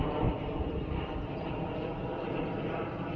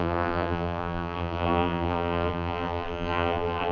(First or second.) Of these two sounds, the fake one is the second